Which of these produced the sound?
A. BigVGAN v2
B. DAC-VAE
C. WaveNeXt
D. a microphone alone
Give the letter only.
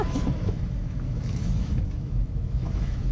B